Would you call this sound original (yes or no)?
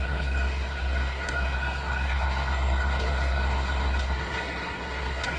no